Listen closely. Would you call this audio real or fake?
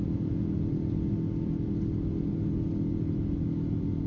real